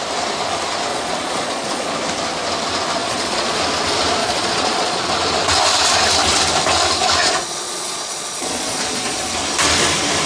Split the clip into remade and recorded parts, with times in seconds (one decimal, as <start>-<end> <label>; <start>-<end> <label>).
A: 0.0-0.9 recorded; 0.9-1.9 remade; 1.9-3.0 recorded; 3.0-3.6 remade; 3.6-4.2 recorded; 4.2-5.1 remade; 5.1-7.2 recorded; 7.2-9.3 remade; 9.3-10.3 recorded